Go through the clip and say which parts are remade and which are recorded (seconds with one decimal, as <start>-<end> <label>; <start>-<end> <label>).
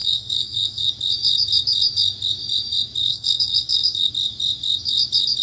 0.0-0.9 remade; 0.9-3.0 recorded; 3.0-4.1 remade; 4.1-5.4 recorded